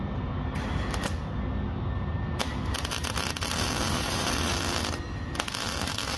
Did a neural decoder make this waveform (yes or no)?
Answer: no